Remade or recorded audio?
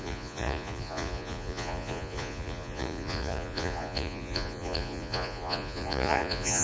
remade